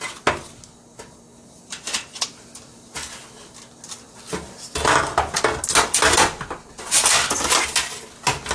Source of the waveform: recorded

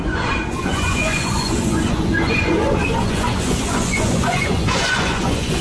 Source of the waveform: remade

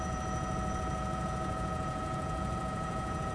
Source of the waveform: remade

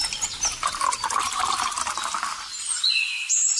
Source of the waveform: recorded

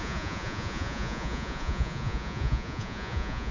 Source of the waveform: remade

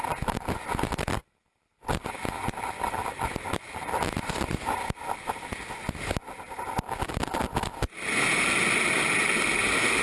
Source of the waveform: recorded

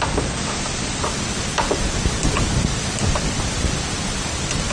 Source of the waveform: recorded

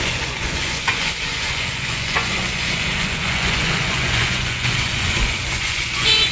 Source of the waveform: remade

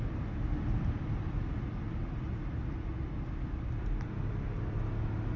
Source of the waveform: recorded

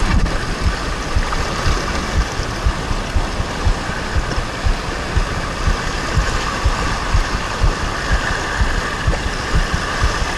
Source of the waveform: recorded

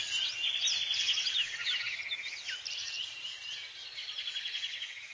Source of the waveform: recorded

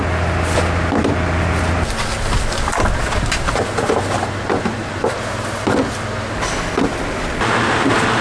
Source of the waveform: recorded